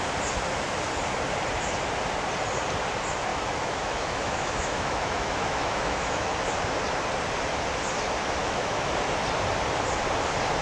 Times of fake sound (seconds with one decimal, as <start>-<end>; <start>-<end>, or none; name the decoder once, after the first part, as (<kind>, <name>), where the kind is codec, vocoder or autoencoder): 3.3-6.3 (autoencoder, DAC-VAE); 8.4-8.9